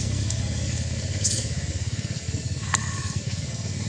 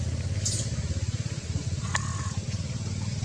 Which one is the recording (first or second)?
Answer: second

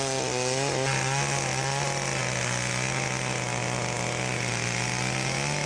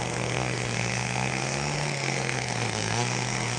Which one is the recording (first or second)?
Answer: first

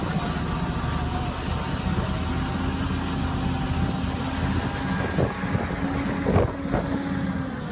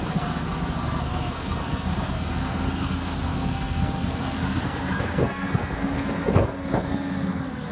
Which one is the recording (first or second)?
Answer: first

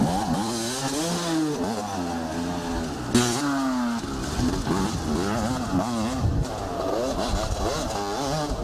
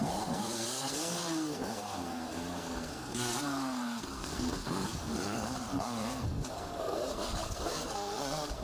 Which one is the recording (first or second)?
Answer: first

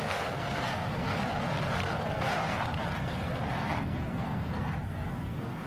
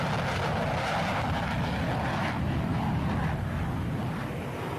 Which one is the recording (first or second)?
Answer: second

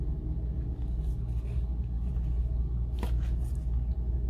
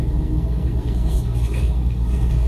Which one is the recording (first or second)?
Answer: first